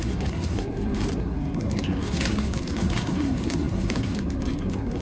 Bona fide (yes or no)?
no